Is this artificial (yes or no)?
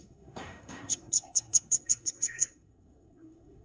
yes